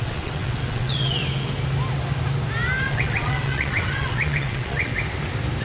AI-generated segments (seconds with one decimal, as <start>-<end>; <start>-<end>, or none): 0.0-1.2; 2.8-4.9